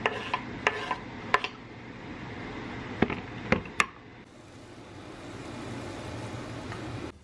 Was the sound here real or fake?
real